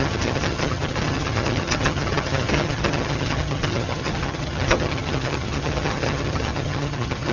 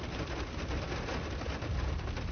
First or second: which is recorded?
second